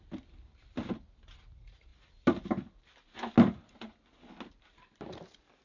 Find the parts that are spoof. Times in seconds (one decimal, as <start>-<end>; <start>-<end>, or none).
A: none